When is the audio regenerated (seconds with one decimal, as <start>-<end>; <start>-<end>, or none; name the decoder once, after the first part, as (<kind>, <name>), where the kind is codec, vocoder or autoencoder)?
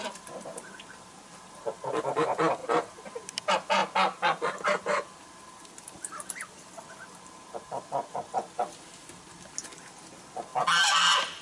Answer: none